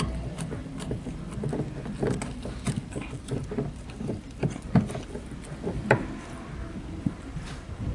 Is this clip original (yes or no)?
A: yes